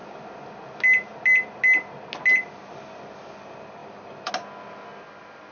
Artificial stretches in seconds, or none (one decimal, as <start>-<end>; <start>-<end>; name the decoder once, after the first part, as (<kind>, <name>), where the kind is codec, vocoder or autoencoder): 3.8-4.3 (vocoder, BigVGAN v2)